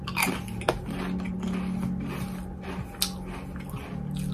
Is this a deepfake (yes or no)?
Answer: no